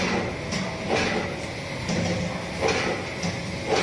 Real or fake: real